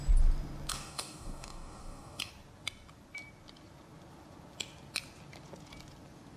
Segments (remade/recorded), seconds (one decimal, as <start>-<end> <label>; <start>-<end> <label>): 0.0-0.7 recorded; 0.7-2.3 remade; 2.3-6.4 recorded